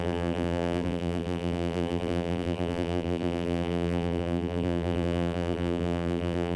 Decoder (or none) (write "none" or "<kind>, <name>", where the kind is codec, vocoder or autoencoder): vocoder, BigVGAN v2